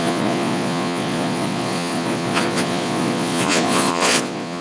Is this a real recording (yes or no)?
no